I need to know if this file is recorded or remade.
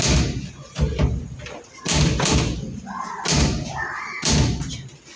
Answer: recorded